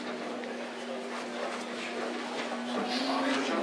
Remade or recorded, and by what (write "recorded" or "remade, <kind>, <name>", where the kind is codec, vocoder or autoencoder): recorded